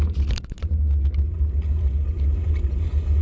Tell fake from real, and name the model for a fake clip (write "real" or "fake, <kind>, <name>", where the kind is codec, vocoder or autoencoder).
real